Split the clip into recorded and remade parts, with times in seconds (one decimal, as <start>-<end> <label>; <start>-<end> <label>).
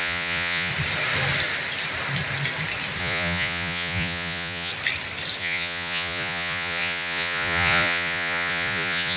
0.0-0.7 remade; 0.7-3.0 recorded; 3.0-4.7 remade; 4.7-5.4 recorded; 5.4-9.2 remade